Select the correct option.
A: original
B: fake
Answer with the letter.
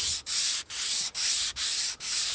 A